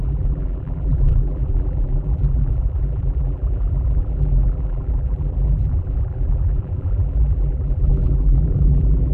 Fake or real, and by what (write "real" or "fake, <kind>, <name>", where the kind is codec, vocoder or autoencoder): fake, vocoder, BigVGAN v2